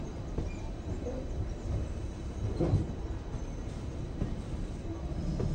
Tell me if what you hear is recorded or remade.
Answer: recorded